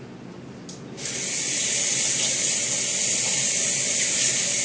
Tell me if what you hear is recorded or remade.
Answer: recorded